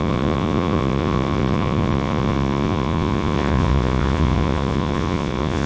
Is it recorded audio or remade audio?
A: remade